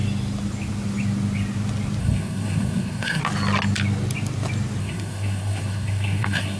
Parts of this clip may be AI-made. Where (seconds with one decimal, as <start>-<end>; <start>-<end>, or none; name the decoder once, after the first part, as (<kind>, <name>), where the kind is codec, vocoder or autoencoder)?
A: 2.0-3.2 (codec, SNAC); 4.8-6.6